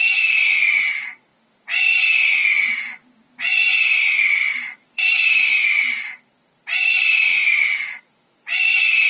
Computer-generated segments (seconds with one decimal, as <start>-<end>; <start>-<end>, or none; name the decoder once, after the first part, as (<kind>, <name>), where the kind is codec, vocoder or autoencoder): 4.4-9.1 (vocoder, BigVGAN v2)